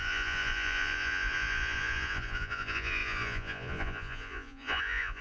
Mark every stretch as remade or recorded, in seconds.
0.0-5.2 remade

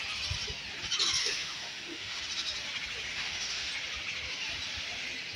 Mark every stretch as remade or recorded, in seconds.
0.0-1.2 recorded; 1.2-2.2 remade; 2.2-3.1 recorded; 3.1-3.7 remade; 3.7-5.4 recorded

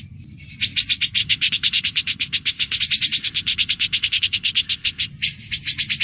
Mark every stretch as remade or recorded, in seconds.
0.0-1.2 recorded; 1.2-2.8 remade; 2.8-3.2 recorded; 3.2-5.1 remade; 5.1-6.0 recorded